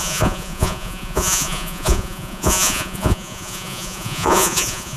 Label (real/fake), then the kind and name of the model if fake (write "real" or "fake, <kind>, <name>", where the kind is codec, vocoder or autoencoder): fake, vocoder, Vocos